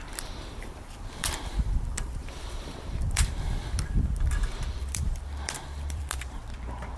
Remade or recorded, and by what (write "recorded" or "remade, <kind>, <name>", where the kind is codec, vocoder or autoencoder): remade, vocoder, BigVGAN v2